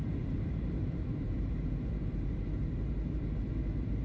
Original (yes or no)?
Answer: no